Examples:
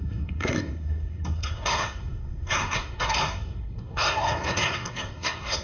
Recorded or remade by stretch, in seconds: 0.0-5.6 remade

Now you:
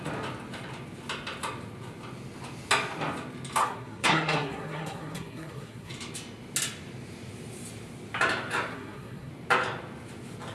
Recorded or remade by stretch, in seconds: 0.0-3.6 recorded; 3.6-5.9 remade; 5.9-8.7 recorded; 8.7-9.3 remade; 9.3-10.5 recorded

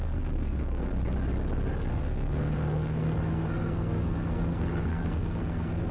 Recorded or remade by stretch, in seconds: 0.0-0.9 remade; 0.9-1.9 recorded; 1.9-5.9 remade

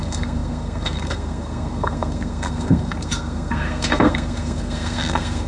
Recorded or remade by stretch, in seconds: 0.0-5.5 remade

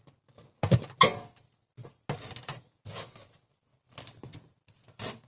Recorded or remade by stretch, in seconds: 0.0-5.3 recorded

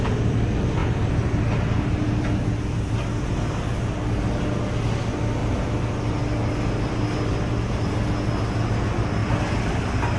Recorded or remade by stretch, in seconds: 0.0-10.2 recorded

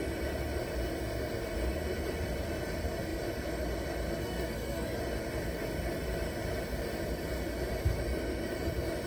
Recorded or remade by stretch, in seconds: 0.0-4.2 recorded; 4.2-5.0 remade; 5.0-9.1 recorded

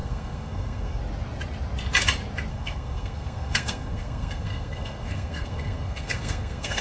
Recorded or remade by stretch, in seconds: 0.0-1.0 remade; 1.0-2.5 recorded; 2.5-6.8 remade